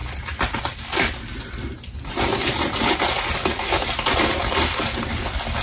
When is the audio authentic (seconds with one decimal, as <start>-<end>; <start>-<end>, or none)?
0.0-5.6